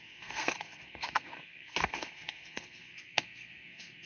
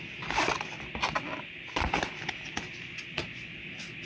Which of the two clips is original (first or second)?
second